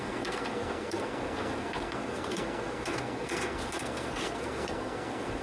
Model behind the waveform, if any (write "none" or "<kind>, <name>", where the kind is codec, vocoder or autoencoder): codec, SNAC